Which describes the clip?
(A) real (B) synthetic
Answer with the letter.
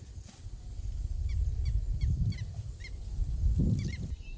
A